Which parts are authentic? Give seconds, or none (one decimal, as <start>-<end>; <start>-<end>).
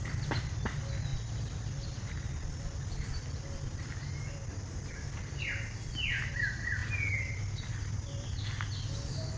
0.0-1.1; 6.3-9.4